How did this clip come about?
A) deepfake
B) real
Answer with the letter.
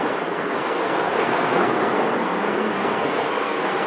A